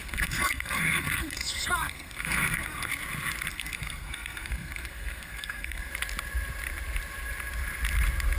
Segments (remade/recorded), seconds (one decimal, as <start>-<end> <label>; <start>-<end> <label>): 0.0-2.9 remade; 2.9-3.5 recorded; 3.5-5.9 remade; 5.9-8.4 recorded